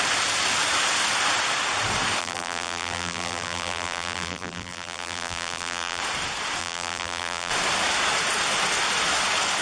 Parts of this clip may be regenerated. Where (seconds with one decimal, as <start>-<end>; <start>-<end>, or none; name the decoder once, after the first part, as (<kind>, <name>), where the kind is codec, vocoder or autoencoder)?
2.2-6.0 (vocoder, BigVGAN v2); 6.6-7.5